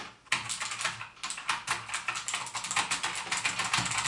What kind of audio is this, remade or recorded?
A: recorded